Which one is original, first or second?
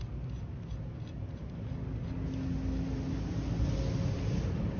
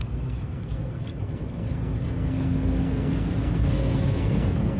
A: first